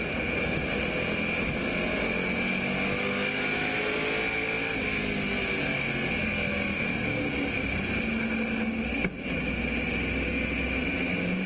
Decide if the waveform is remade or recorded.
recorded